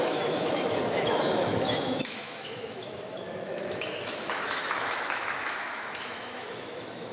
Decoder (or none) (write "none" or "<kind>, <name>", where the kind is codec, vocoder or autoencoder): autoencoder, DAC-VAE